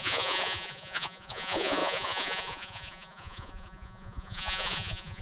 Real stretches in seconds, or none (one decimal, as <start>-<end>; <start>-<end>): none